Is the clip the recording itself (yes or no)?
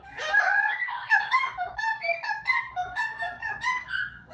no